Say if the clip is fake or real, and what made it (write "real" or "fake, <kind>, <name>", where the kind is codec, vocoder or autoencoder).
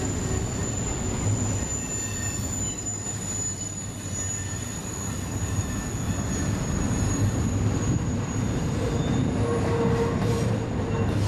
real